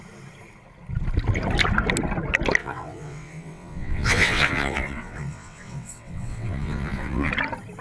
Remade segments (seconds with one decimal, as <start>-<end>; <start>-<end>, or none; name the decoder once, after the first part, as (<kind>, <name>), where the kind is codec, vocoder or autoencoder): 2.6-7.3 (vocoder, WaveNeXt)